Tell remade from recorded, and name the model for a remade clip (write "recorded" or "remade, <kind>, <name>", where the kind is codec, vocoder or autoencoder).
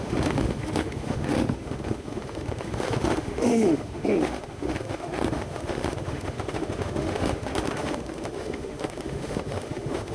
remade, autoencoder, DAC-VAE